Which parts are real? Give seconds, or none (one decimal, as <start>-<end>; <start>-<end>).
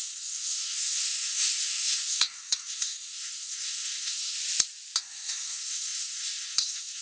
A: 4.4-5.0